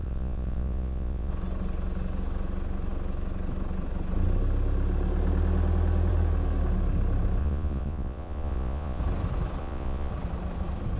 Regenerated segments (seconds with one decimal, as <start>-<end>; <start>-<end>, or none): 0.0-1.3; 7.4-9.0; 9.6-10.1